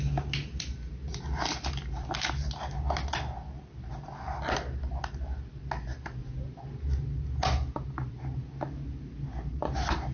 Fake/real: real